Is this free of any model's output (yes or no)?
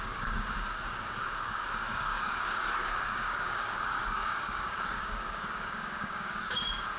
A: no